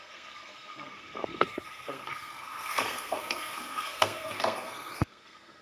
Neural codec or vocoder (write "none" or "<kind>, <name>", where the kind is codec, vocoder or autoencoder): codec, SNAC